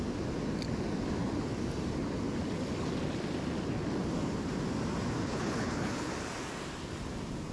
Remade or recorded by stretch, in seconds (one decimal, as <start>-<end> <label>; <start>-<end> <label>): 0.0-5.2 recorded; 5.2-6.1 remade; 6.1-7.5 recorded